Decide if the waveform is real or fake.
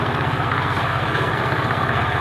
fake